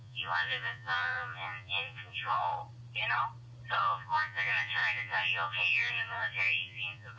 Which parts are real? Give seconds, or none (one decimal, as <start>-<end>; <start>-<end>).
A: 2.5-3.8